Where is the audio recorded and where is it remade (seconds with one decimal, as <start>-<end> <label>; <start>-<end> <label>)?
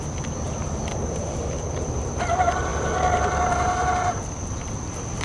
0.0-5.2 recorded